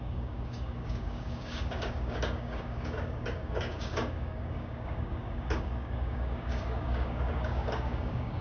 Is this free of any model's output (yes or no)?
no